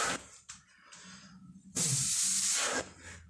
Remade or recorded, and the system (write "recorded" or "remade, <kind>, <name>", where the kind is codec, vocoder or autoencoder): remade, vocoder, BigVGAN v2